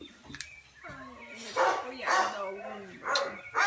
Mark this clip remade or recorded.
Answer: recorded